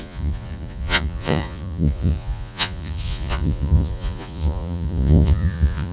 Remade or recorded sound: remade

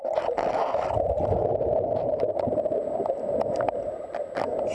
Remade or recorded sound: recorded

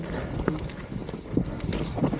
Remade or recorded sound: recorded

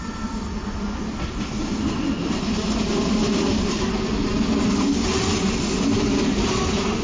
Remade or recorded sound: recorded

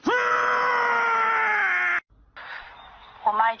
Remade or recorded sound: recorded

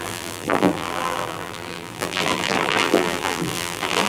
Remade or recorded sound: remade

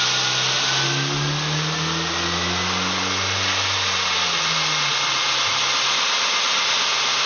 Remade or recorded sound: recorded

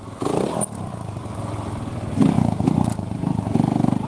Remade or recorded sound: remade